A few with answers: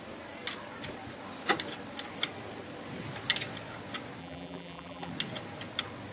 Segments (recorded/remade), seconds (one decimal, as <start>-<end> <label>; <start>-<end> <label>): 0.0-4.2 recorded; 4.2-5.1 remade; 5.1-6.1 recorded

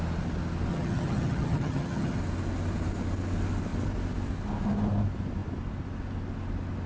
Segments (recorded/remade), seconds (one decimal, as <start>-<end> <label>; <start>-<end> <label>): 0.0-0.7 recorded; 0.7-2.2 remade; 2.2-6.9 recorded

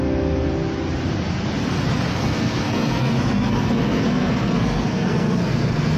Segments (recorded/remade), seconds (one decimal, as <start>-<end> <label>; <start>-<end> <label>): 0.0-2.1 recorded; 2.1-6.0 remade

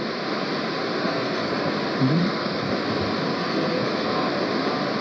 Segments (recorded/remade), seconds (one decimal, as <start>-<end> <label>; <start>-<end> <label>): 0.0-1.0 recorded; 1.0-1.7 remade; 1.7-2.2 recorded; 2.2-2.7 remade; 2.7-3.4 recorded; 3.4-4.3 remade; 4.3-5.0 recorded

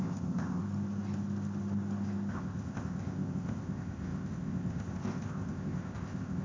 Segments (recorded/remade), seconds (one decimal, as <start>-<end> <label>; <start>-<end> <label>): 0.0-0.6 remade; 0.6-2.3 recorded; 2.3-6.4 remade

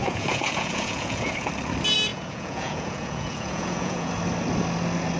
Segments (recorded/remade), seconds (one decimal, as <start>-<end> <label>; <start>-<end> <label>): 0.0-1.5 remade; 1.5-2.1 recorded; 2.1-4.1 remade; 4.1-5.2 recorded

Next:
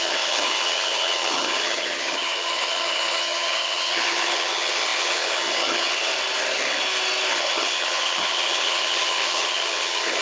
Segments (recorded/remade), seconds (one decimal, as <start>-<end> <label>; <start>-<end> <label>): 0.0-6.1 remade; 6.1-7.3 recorded; 7.3-10.2 remade

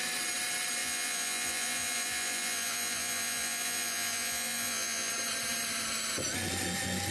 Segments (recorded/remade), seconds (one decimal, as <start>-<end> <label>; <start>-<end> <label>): 0.0-0.8 recorded; 0.8-5.1 remade; 5.1-7.1 recorded